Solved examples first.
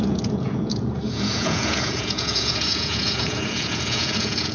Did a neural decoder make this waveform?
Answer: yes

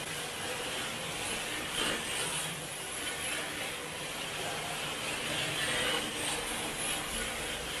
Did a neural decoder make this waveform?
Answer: no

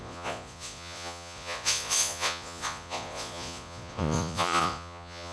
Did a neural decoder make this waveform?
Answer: yes